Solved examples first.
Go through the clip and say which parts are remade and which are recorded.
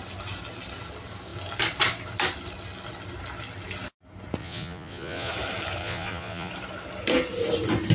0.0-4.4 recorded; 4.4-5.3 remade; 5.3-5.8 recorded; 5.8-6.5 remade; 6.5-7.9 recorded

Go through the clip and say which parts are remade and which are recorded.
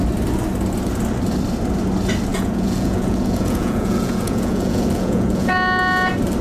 0.0-2.3 recorded; 2.3-5.5 remade; 5.5-6.4 recorded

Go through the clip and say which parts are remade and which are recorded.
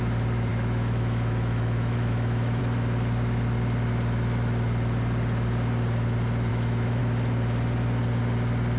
0.0-0.5 recorded; 0.5-2.6 remade; 2.6-6.5 recorded; 6.5-7.0 remade; 7.0-8.8 recorded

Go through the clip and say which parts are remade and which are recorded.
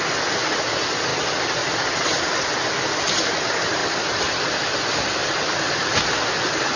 0.0-3.8 recorded; 3.8-4.8 remade; 4.8-6.8 recorded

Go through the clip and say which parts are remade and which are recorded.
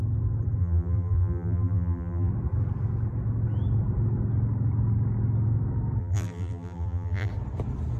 0.0-0.6 recorded; 0.6-2.3 remade; 2.3-6.0 recorded; 6.0-7.3 remade; 7.3-8.0 recorded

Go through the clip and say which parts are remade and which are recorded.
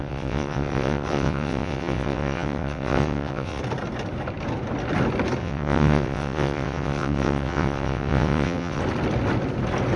0.0-3.6 remade; 3.6-5.4 recorded; 5.4-8.8 remade; 8.8-10.0 recorded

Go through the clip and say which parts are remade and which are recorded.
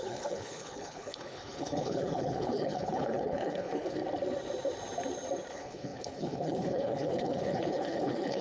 0.0-4.0 remade; 4.0-5.5 recorded; 5.5-8.4 remade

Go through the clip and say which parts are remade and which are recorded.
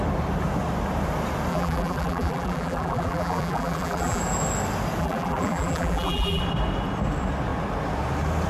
0.0-1.5 recorded; 1.5-4.2 remade; 4.2-5.0 recorded; 5.0-6.4 remade; 6.4-8.5 recorded